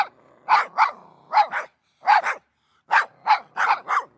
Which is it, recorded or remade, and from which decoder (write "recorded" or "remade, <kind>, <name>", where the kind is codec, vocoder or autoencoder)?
recorded